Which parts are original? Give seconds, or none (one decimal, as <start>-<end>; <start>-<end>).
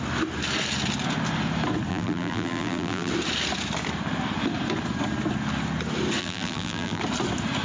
0.0-1.9; 3.1-6.2; 7.0-7.6